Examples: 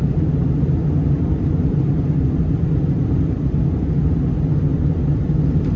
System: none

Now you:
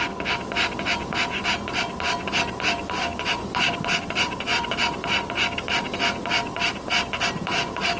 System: none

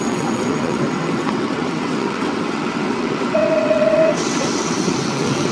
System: vocoder, WaveNeXt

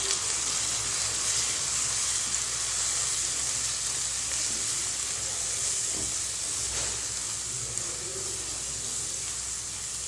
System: none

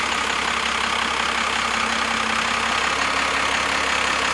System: none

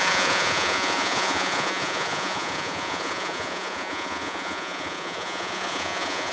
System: vocoder, Vocos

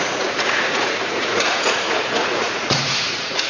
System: vocoder, Vocos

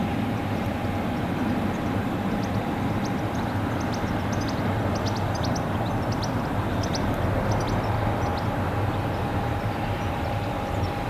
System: none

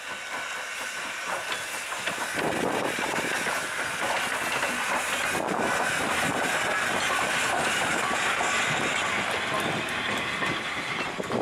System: none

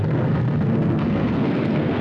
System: codec, SNAC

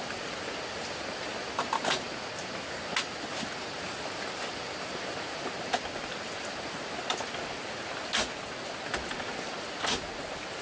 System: none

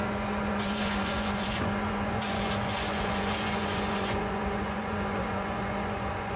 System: vocoder, Vocos